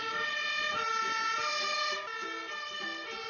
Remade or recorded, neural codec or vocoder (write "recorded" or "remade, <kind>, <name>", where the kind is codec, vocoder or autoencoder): recorded